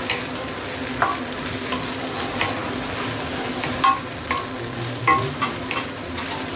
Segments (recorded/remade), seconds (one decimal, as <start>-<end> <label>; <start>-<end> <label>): 0.0-6.6 recorded